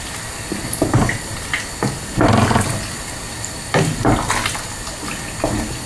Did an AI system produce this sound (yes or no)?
no